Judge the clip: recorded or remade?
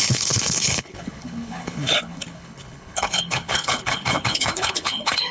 remade